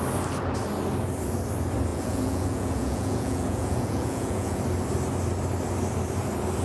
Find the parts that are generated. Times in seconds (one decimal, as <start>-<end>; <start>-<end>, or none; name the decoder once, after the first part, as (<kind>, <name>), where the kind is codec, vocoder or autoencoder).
1.9-4.6 (vocoder, Vocos)